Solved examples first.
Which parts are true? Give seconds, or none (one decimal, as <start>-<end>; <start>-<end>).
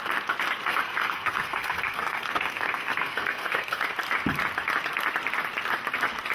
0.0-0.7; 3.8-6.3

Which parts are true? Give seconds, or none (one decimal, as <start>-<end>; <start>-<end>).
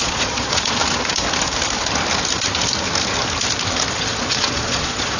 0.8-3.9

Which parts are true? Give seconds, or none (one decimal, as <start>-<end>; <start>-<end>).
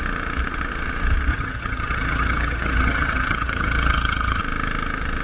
0.0-1.3; 4.4-5.2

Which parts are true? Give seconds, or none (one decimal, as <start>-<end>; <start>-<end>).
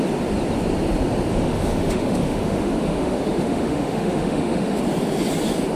0.0-1.3; 4.8-5.8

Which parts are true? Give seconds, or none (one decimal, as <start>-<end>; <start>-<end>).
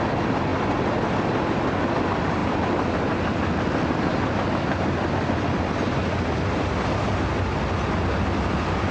0.0-8.9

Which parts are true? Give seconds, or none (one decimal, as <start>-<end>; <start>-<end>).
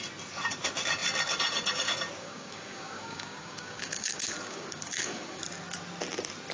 0.0-2.2; 5.4-6.5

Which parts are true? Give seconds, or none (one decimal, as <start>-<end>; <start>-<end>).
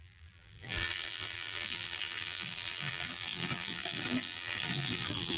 none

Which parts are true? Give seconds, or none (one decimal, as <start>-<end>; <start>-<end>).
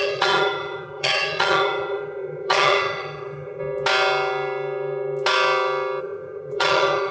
3.6-6.0